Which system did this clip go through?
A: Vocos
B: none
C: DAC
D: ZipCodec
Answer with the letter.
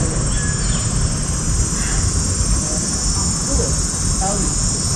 B